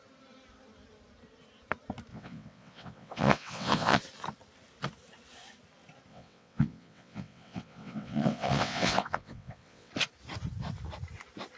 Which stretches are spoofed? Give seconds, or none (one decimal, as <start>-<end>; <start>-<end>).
2.1-4.0; 6.1-9.9